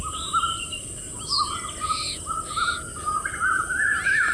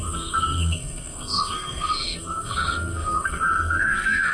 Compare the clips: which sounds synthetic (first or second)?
second